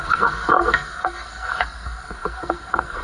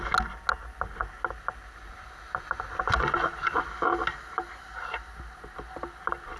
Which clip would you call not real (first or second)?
first